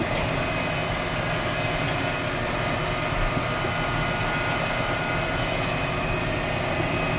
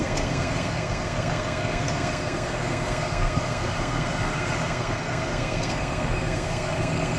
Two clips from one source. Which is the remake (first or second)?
second